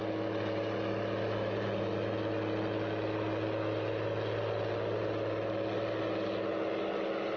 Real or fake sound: real